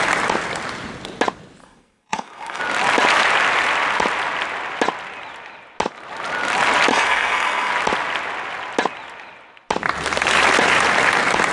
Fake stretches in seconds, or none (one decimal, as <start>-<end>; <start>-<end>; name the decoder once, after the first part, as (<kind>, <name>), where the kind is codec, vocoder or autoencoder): 1.6-2.6 (codec, SNAC); 6.9-7.7